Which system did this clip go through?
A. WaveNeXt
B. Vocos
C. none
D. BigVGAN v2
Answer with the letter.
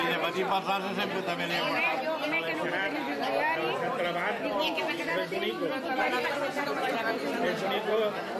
C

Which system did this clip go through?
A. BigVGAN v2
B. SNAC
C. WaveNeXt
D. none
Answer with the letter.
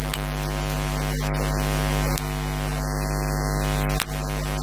D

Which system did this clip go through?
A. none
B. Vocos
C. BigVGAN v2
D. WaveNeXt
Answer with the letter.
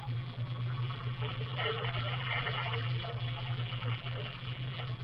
C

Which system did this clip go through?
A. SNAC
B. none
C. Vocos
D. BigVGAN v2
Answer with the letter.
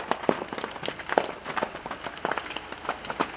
B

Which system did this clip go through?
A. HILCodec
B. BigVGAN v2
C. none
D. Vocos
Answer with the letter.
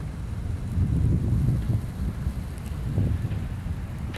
C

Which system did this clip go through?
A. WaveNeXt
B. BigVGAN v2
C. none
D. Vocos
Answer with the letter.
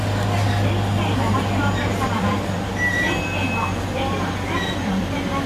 C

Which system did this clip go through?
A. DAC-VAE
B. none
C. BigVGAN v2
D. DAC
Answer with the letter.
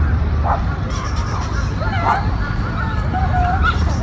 C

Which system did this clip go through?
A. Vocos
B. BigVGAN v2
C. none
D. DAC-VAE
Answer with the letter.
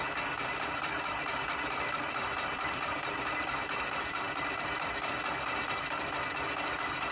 B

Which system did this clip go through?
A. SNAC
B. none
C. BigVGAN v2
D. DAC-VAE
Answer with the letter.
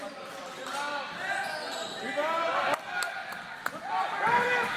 B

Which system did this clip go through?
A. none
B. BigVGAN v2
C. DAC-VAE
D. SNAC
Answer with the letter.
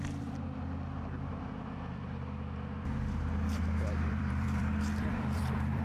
B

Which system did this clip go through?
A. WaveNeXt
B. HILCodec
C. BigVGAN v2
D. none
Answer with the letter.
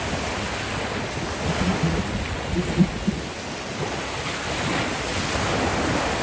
D